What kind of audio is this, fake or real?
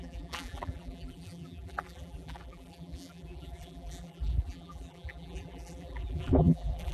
fake